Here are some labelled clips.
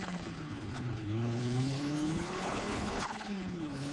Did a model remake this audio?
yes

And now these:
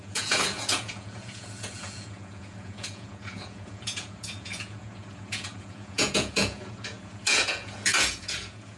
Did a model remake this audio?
yes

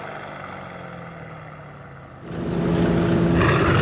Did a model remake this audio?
no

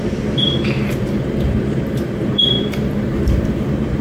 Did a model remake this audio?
yes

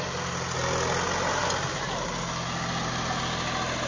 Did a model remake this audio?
no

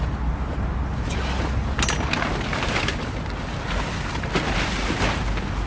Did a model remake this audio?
no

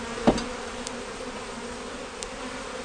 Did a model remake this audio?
no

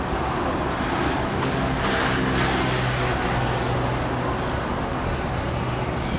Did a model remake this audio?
no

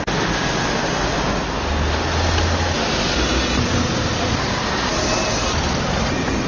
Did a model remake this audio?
no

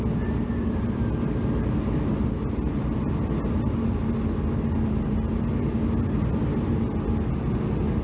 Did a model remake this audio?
no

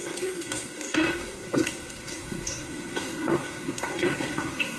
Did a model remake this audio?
yes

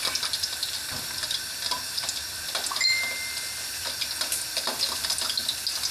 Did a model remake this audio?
no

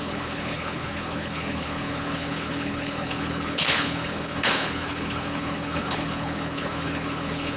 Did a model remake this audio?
yes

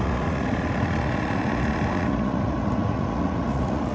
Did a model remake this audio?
yes